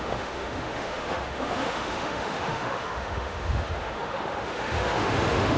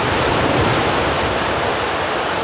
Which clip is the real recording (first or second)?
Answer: second